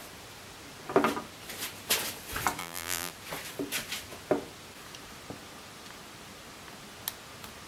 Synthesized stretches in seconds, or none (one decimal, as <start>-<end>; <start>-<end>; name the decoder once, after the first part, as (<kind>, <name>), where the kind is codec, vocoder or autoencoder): 2.6-3.1 (vocoder, BigVGAN v2)